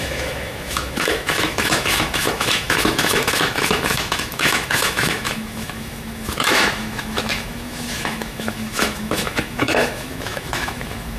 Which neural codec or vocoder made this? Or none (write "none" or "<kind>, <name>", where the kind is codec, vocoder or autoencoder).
autoencoder, DAC-VAE